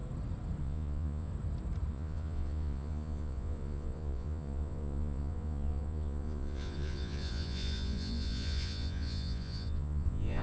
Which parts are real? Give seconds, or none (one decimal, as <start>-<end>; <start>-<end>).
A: 0.0-0.6; 1.3-1.9